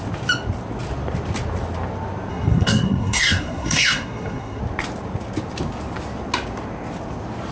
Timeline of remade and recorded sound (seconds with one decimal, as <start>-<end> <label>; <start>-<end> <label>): 0.0-2.3 recorded; 2.3-4.6 remade; 4.6-7.5 recorded